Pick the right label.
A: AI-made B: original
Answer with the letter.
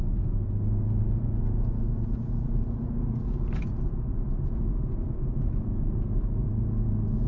A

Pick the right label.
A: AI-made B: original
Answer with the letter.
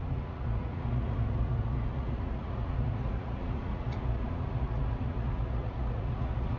A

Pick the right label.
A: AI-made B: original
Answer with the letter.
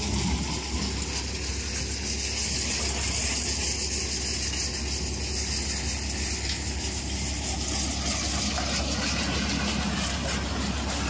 B